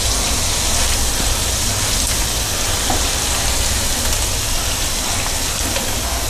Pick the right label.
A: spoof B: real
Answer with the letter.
B